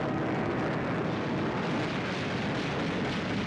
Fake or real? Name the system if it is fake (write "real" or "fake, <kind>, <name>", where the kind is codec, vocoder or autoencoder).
real